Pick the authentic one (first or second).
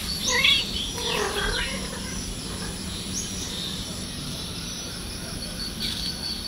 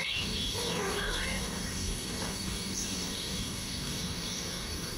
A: first